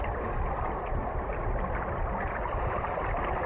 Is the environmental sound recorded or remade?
recorded